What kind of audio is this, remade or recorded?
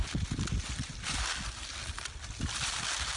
recorded